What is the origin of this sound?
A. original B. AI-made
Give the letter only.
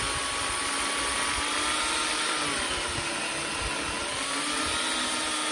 A